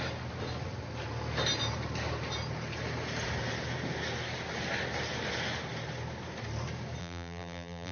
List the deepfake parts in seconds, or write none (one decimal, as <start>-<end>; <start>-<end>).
7.0-7.9